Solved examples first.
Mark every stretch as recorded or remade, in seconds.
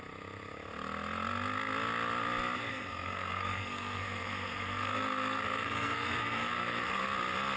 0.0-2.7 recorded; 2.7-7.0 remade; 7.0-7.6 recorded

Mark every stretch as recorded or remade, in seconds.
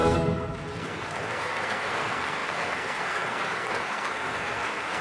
0.0-5.0 remade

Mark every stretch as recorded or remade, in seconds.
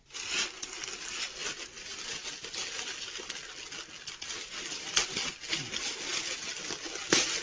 0.0-7.4 recorded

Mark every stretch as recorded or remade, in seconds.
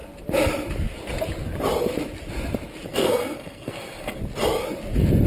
0.0-2.9 recorded; 2.9-4.2 remade; 4.2-5.3 recorded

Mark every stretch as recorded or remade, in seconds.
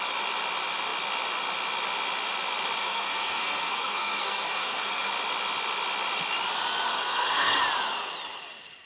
0.0-2.8 recorded; 2.8-5.1 remade; 5.1-6.9 recorded; 6.9-7.6 remade; 7.6-8.9 recorded